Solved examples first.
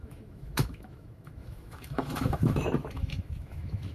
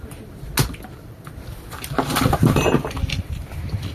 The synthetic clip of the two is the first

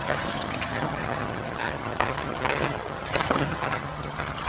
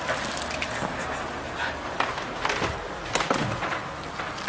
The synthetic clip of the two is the first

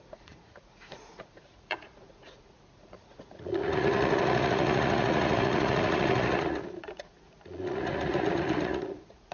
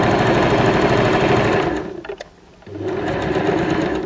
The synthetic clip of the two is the first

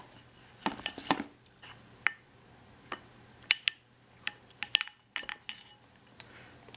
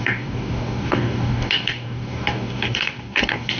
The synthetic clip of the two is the second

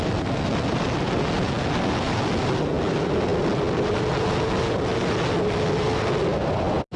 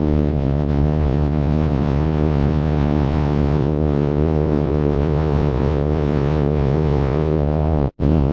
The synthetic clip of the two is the second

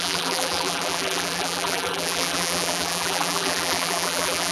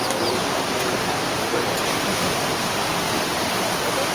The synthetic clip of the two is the first